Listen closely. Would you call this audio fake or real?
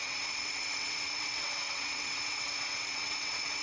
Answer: fake